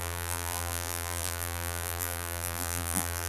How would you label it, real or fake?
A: fake